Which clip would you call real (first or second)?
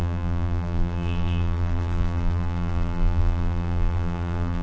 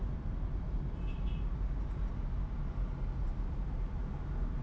second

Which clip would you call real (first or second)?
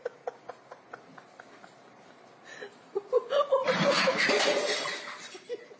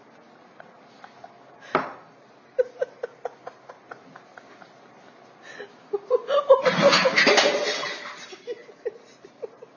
second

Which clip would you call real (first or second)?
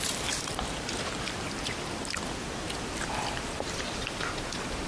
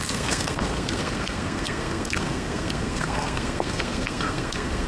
first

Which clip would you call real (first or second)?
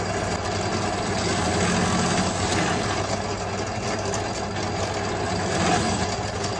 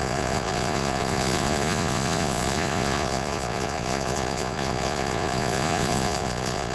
first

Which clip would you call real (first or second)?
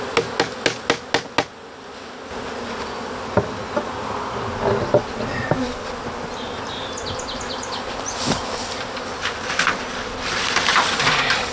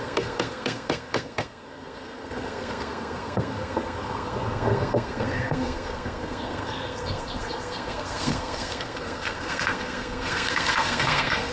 first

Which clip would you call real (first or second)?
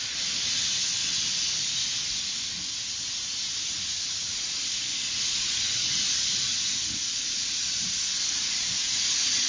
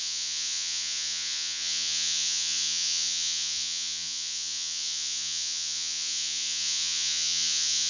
first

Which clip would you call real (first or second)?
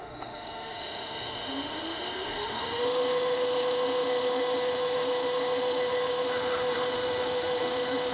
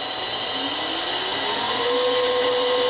second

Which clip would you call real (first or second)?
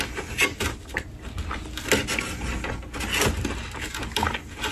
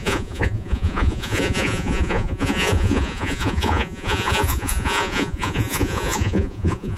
first